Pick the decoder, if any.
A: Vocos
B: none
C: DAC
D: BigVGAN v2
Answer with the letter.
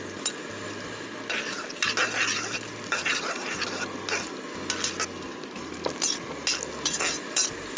B